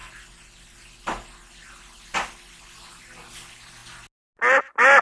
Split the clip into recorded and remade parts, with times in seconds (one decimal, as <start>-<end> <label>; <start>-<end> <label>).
0.0-5.0 recorded